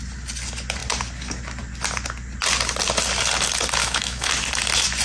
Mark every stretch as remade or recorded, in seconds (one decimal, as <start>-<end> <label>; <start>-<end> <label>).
0.0-3.8 recorded; 3.8-4.3 remade; 4.3-5.0 recorded